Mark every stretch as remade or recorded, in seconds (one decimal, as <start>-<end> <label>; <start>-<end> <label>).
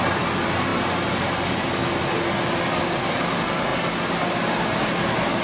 0.0-5.4 recorded